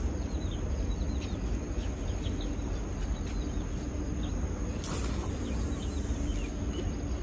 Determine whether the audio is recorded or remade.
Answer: recorded